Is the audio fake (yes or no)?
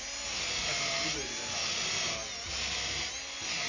no